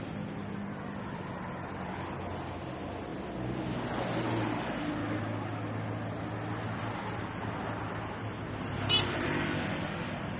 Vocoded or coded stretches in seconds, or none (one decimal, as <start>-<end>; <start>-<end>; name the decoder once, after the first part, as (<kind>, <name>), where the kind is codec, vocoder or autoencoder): none